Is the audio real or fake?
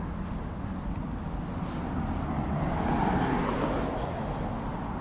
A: real